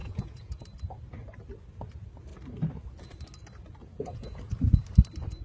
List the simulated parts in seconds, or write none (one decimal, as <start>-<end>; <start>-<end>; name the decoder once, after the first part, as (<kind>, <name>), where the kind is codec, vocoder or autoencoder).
0.0-0.6 (vocoder, Vocos); 3.8-4.5